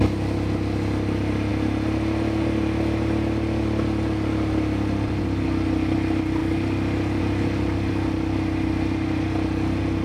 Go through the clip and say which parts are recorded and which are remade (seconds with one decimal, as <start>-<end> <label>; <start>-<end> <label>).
0.0-10.0 recorded